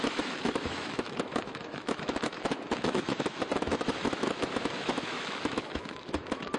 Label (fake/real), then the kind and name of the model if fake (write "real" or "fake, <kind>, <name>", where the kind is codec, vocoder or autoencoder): fake, autoencoder, DAC-VAE